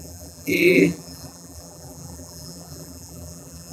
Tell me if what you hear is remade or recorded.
remade